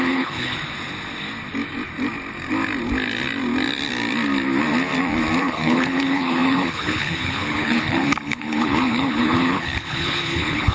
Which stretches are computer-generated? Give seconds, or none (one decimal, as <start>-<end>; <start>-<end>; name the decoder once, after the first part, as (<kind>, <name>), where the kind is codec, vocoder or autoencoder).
0.0-0.5 (codec, HILCodec); 5.4-10.7